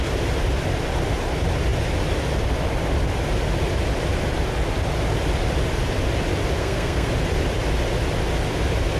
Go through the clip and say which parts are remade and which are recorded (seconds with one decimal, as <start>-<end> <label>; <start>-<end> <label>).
0.0-6.6 recorded; 6.6-7.1 remade; 7.1-9.0 recorded

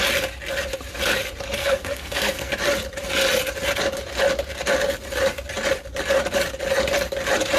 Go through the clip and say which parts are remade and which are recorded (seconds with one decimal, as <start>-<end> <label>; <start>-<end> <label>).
0.0-1.6 recorded; 1.6-2.5 remade; 2.5-7.6 recorded

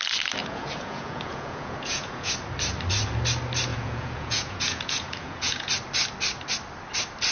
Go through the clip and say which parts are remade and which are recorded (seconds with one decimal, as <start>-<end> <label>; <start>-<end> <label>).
0.0-0.4 recorded; 0.4-2.3 remade; 2.3-3.7 recorded; 3.7-5.7 remade; 5.7-7.3 recorded

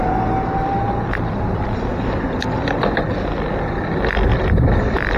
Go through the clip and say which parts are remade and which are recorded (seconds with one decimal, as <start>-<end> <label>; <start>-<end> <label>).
0.0-5.2 recorded